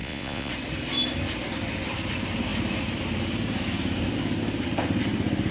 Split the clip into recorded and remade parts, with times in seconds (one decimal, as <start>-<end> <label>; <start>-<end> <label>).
0.0-0.5 remade; 0.5-5.5 recorded